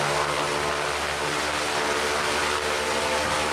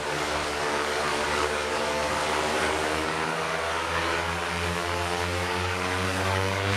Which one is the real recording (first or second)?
first